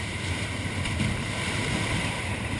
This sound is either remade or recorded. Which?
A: remade